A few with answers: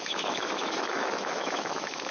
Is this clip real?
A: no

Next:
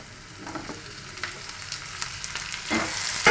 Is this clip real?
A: yes